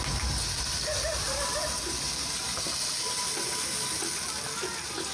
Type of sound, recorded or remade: recorded